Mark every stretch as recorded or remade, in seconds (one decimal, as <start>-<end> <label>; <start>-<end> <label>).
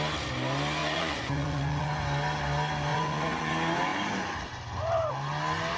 0.0-0.8 recorded; 0.8-1.9 remade; 1.9-2.9 recorded; 2.9-3.5 remade; 3.5-5.8 recorded